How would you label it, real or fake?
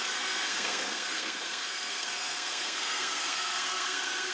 fake